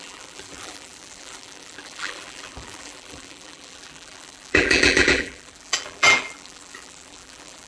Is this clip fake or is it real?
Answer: fake